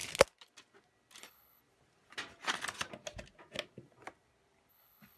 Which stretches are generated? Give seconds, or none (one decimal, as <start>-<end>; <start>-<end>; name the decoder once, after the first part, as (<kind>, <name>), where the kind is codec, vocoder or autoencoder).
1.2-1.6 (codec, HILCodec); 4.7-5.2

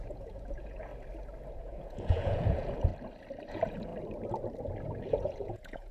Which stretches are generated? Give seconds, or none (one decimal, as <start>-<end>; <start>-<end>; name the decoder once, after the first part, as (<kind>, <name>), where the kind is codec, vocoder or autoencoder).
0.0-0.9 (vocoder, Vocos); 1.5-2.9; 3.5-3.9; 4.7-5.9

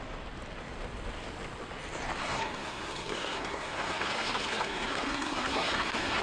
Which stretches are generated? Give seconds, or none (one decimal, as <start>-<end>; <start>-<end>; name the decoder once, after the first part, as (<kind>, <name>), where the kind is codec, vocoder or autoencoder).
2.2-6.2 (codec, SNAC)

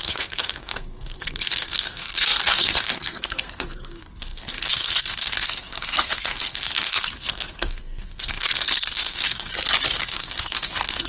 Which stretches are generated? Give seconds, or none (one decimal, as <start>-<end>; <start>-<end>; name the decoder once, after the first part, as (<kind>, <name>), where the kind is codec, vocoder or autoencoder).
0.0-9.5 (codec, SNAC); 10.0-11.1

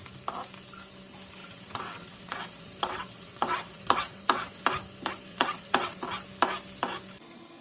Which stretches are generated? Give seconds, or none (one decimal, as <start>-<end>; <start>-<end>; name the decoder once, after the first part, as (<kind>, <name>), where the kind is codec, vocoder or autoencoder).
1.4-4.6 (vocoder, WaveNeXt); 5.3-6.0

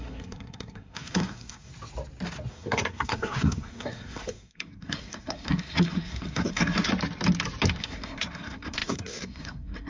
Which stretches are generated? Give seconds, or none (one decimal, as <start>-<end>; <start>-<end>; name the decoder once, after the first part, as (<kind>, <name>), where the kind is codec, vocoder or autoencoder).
0.0-1.7 (codec, SNAC); 2.5-6.9; 7.8-9.9

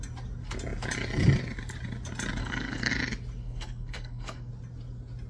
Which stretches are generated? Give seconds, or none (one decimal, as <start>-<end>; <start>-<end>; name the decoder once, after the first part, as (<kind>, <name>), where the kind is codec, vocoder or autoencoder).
2.4-2.9 (codec, SNAC); 3.4-4.5

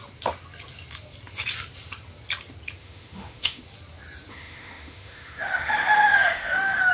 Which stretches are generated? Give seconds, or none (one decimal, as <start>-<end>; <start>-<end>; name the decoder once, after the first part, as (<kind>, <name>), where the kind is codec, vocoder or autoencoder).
2.8-3.6 (autoencoder, DAC-VAE); 4.3-6.9